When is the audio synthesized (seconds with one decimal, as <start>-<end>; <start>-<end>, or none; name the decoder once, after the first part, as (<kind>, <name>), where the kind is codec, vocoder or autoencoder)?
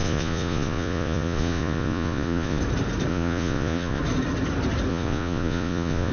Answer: 0.0-2.6 (vocoder, Vocos); 3.1-4.0; 4.9-6.1